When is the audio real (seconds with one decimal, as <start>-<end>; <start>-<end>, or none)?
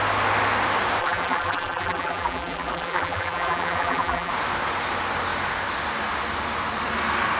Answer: 0.0-1.0; 4.3-7.4